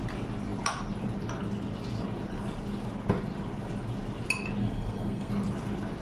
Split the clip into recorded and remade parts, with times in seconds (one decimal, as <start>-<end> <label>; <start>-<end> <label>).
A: 0.0-4.6 recorded; 4.6-5.3 remade; 5.3-6.0 recorded